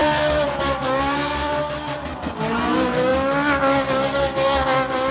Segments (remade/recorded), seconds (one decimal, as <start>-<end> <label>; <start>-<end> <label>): 0.0-0.6 remade; 0.6-5.1 recorded